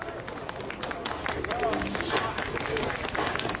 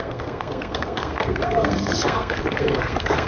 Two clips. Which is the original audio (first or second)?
first